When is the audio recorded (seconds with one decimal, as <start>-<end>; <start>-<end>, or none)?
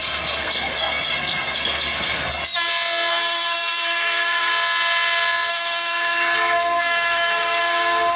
2.4-3.1; 4.5-5.5